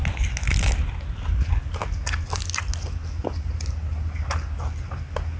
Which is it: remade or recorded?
recorded